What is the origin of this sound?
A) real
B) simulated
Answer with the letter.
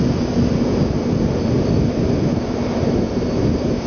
A